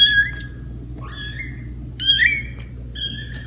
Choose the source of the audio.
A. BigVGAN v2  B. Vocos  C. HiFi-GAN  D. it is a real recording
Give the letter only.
D